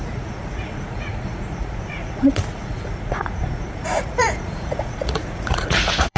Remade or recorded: remade